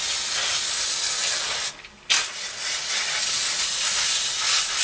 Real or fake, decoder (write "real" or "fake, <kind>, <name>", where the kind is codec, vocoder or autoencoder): real